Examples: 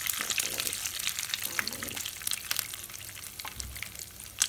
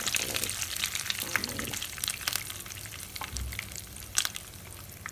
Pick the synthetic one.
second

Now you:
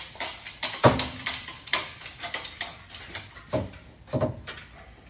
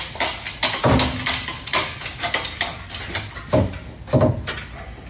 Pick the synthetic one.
first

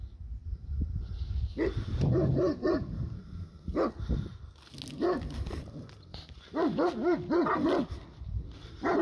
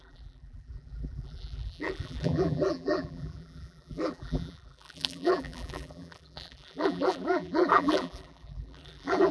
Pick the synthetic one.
second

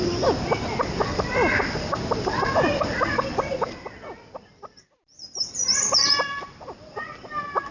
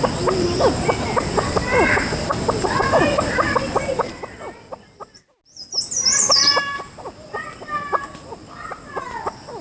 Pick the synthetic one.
first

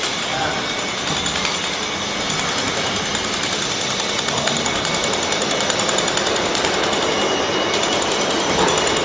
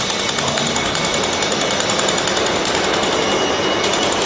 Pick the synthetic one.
first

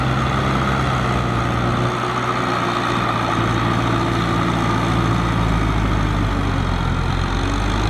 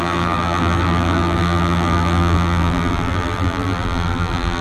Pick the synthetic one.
second